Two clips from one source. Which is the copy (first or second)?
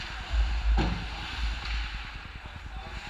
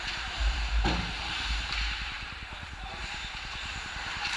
second